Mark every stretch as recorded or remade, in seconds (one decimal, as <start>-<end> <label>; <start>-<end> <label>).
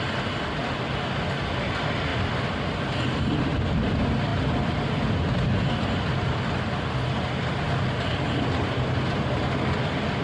0.0-10.2 recorded